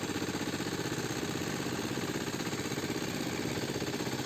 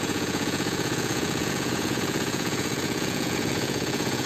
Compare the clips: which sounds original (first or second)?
first